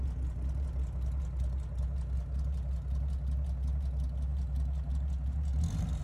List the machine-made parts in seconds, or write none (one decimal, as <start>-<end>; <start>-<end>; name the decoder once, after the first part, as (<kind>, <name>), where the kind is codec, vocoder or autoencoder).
none

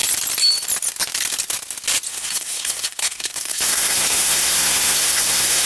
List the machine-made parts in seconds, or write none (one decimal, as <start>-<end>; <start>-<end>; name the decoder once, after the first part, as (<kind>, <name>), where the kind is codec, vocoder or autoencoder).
2.1-5.7 (codec, SNAC)

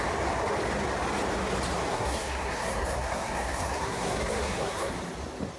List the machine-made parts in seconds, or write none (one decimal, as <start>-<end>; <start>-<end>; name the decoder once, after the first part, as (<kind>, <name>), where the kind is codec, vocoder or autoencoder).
1.9-4.9 (codec, SNAC)

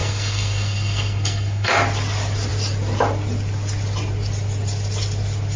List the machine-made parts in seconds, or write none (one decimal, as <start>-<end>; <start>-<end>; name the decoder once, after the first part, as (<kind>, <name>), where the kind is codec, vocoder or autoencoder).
0.0-1.7 (codec, SNAC)

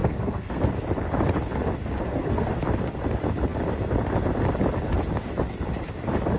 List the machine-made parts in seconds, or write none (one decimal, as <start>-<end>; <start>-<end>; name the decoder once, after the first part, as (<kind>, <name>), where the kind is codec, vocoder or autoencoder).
0.0-0.6 (codec, SNAC); 2.0-2.6

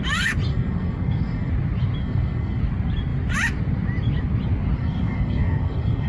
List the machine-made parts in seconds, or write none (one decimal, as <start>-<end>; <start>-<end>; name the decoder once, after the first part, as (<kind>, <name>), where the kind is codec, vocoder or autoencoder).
0.5-1.5 (codec, SNAC); 2.0-2.6; 4.8-6.1